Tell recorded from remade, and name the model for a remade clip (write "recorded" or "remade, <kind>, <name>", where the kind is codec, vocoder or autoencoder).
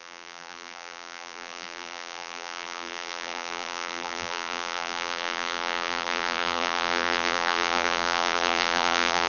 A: remade, vocoder, BigVGAN v2